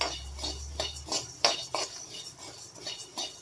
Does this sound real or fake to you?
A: real